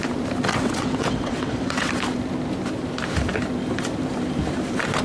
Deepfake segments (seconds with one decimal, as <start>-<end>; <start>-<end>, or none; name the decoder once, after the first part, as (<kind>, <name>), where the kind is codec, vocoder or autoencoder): 0.5-1.9 (vocoder, WaveNeXt)